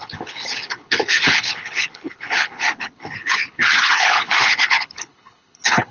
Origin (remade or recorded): remade